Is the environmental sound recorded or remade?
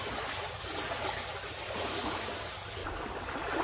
recorded